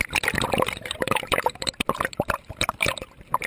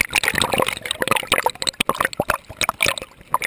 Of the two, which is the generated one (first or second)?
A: first